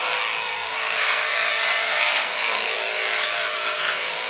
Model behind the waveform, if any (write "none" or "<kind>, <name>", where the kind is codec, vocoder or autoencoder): codec, SNAC